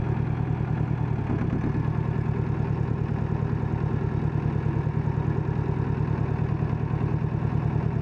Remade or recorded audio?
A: recorded